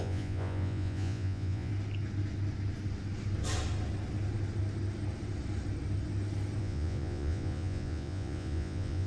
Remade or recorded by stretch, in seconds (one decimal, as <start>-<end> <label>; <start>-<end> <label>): 0.0-1.7 remade; 1.7-6.6 recorded; 6.6-9.1 remade